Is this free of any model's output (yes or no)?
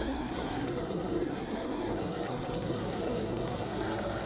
no